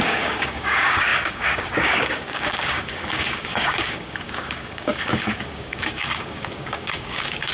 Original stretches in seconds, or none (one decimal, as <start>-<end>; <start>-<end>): none